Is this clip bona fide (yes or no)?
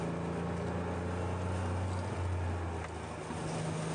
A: yes